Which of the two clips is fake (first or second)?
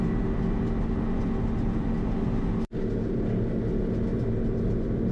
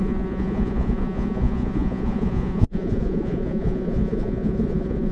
second